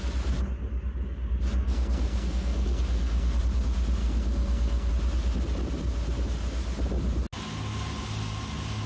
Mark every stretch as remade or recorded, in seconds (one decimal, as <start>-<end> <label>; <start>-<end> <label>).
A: 0.0-1.6 recorded; 1.6-3.4 remade; 3.4-4.0 recorded; 4.0-4.9 remade; 4.9-8.9 recorded